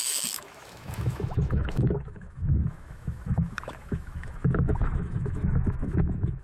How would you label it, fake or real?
fake